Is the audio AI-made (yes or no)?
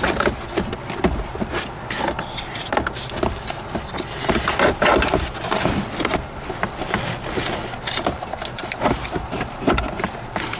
no